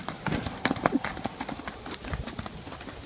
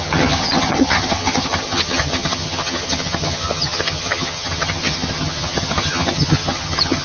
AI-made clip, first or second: second